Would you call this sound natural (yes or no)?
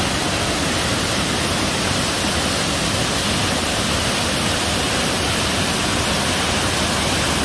yes